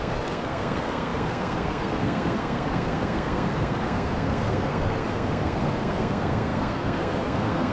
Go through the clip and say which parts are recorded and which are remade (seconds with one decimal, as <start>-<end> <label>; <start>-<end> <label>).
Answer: 0.0-7.7 remade